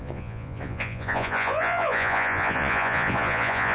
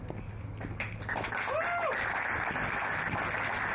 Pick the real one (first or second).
second